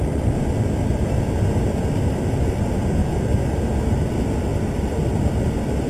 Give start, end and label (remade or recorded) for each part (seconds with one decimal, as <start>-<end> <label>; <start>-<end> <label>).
0.0-3.0 recorded; 3.0-3.8 remade; 3.8-4.5 recorded; 4.5-5.0 remade; 5.0-5.9 recorded